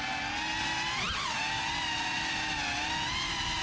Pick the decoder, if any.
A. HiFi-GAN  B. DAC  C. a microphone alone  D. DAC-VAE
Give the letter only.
C